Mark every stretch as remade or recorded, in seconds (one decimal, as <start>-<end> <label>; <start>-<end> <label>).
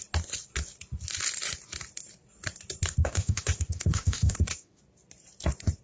0.0-3.0 recorded; 3.0-4.8 remade; 4.8-5.8 recorded